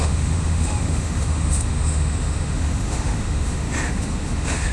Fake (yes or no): yes